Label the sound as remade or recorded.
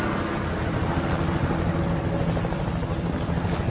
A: recorded